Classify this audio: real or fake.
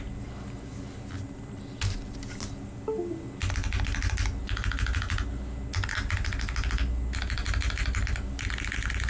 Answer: real